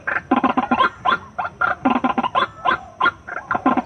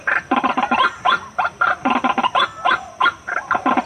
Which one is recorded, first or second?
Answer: first